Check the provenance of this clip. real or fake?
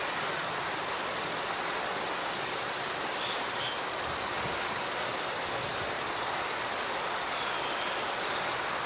fake